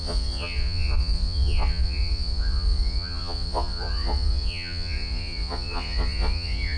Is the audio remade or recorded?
remade